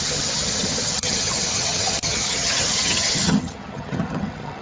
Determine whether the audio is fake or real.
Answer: fake